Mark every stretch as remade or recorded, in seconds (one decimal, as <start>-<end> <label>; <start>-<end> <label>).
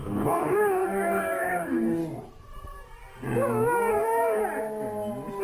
0.0-2.0 remade; 2.0-3.9 recorded; 3.9-4.4 remade; 4.4-5.4 recorded